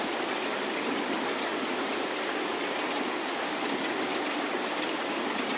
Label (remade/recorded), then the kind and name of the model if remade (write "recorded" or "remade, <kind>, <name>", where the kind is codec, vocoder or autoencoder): recorded